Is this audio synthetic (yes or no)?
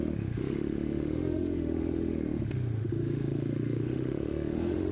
yes